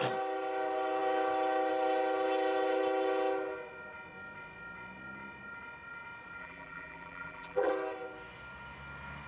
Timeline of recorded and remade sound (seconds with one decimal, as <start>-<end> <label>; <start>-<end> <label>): 0.0-6.4 recorded; 6.4-7.7 remade; 7.7-9.3 recorded